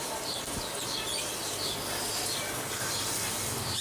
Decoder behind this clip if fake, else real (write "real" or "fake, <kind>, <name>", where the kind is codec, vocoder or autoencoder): real